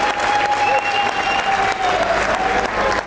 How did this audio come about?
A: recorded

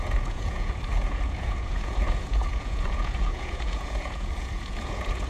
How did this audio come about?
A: remade